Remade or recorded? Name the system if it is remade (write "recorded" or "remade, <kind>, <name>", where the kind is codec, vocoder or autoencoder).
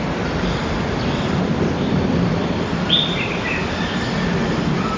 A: recorded